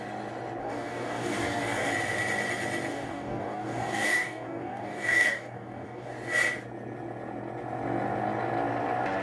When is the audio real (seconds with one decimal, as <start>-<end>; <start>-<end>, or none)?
0.0-0.6; 1.9-2.9; 6.1-9.2